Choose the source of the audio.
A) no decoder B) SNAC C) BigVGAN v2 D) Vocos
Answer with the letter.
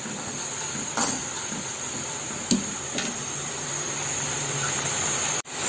A